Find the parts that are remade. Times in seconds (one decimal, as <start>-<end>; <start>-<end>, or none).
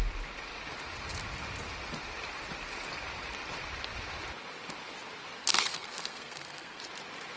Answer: 5.4-6.8